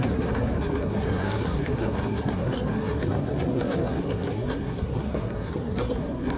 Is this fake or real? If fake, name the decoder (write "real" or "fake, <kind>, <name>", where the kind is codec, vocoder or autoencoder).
fake, codec, SNAC